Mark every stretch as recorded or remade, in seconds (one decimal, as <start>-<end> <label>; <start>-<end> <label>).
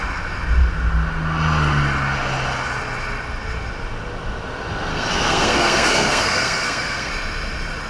0.0-4.9 recorded; 4.9-7.1 remade; 7.1-7.9 recorded